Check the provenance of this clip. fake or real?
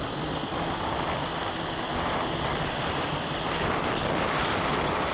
real